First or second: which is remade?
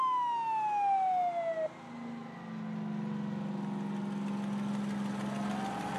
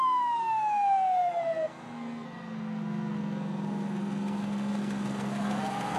second